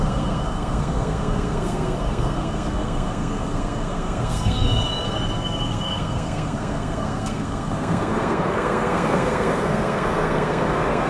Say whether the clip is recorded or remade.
remade